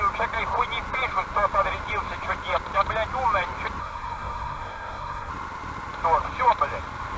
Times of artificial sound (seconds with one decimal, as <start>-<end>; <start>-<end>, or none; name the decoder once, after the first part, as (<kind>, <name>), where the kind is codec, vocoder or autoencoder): 3.8-5.3 (codec, SNAC)